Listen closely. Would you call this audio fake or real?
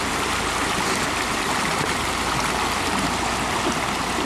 real